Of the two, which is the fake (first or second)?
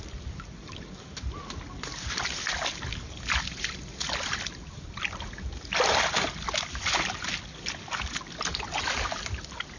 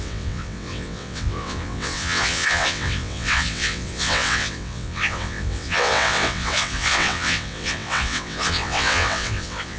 second